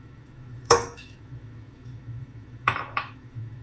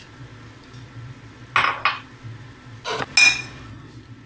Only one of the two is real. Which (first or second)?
second